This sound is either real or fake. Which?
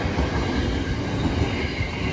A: real